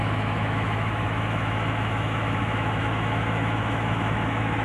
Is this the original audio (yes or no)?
no